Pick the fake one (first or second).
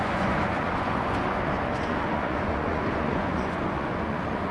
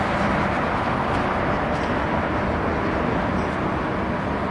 first